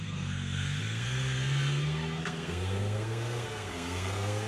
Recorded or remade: remade